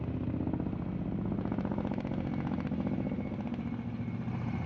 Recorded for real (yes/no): yes